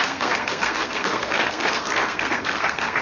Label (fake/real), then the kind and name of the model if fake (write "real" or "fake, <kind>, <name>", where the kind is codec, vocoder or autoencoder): fake, codec, SNAC